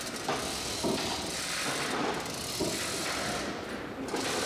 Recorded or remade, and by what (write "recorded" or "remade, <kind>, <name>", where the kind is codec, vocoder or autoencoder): recorded